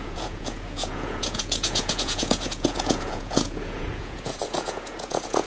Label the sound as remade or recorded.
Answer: remade